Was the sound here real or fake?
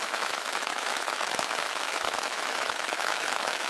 fake